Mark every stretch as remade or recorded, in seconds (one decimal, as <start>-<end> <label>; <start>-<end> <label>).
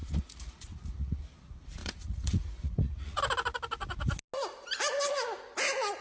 0.0-1.2 remade; 1.2-1.8 recorded; 1.8-3.2 remade; 3.2-6.0 recorded